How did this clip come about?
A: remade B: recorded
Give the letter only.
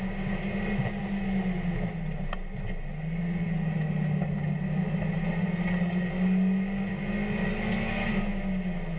B